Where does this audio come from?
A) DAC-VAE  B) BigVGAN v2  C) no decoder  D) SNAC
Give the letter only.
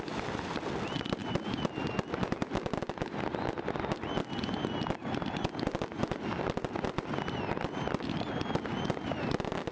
C